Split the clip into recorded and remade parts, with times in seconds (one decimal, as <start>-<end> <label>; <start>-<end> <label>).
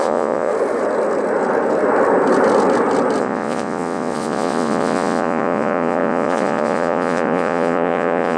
0.0-0.5 remade; 0.5-3.2 recorded; 3.2-8.4 remade